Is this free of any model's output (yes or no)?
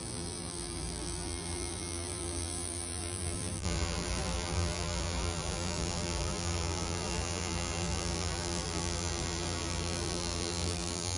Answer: no